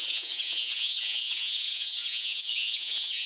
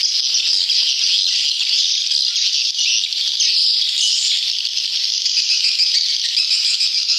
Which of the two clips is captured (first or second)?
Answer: second